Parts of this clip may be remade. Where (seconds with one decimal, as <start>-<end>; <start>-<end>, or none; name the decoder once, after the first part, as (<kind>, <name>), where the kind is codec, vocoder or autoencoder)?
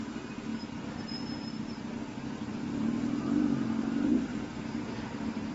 none